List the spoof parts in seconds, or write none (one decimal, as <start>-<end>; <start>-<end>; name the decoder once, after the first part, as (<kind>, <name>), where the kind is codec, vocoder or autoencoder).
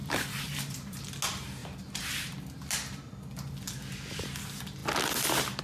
0.0-1.0 (vocoder, BigVGAN v2)